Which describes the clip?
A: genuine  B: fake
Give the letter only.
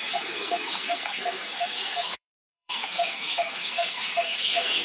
B